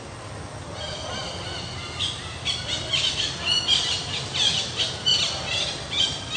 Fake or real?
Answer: real